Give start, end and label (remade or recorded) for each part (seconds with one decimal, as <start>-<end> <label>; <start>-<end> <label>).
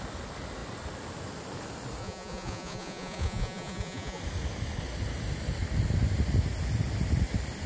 0.0-2.0 recorded; 2.0-4.2 remade; 4.2-7.7 recorded